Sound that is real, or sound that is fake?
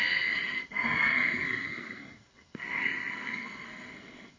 fake